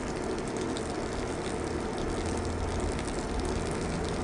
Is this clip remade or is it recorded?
recorded